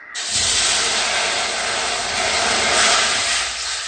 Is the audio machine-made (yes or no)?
no